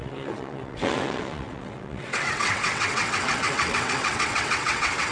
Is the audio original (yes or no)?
no